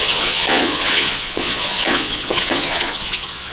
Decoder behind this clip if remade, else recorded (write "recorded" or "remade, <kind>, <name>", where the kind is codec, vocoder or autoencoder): remade, vocoder, Vocos